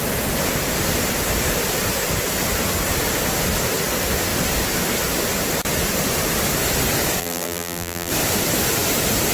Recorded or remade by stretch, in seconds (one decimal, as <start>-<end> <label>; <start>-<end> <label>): 0.0-7.2 recorded; 7.2-8.1 remade; 8.1-9.3 recorded

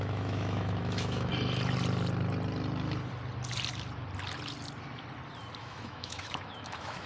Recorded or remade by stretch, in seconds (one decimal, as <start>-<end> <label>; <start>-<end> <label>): 0.0-1.3 remade; 1.3-5.6 recorded; 5.6-7.1 remade

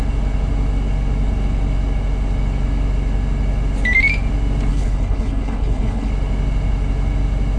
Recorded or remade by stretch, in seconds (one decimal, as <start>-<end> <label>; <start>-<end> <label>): 0.0-4.7 recorded; 4.7-6.1 remade; 6.1-7.6 recorded